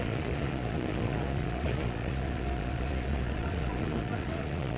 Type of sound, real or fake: fake